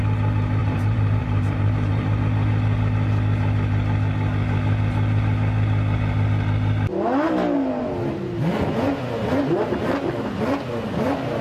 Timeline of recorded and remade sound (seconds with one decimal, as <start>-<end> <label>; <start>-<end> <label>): 0.0-0.6 recorded; 0.6-2.2 remade; 2.2-11.4 recorded